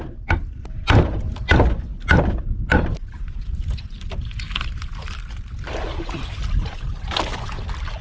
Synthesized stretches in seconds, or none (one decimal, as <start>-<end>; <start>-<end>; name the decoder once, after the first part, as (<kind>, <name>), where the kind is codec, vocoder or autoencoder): none